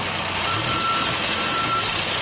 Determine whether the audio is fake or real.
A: real